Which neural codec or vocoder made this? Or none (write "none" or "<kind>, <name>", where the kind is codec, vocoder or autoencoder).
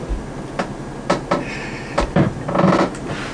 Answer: none